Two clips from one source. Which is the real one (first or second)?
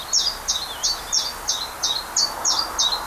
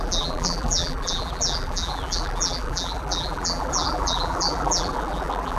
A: first